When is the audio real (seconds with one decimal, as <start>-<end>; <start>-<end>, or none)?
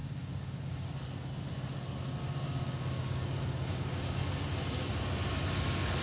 0.9-2.2; 4.9-6.0